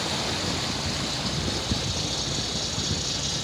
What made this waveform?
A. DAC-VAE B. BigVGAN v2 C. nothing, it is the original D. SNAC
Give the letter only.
C